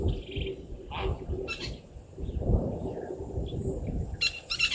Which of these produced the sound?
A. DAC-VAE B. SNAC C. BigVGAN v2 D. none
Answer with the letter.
D